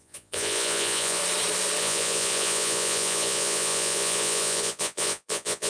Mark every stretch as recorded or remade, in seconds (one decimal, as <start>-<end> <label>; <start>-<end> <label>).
0.0-1.2 remade; 1.2-1.8 recorded; 1.8-5.7 remade

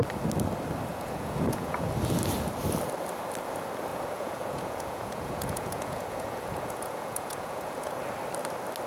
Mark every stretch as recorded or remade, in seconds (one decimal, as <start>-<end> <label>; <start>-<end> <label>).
0.0-0.9 recorded; 0.9-1.9 remade; 1.9-3.9 recorded; 3.9-8.0 remade; 8.0-8.9 recorded

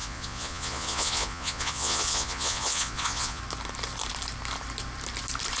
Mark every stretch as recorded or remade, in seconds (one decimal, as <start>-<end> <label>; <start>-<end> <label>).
0.0-3.4 remade; 3.4-5.6 recorded